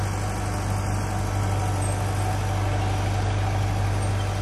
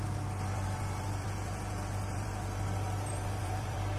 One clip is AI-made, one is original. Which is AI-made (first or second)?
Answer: second